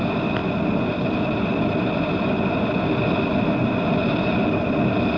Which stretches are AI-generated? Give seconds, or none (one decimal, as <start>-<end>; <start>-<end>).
none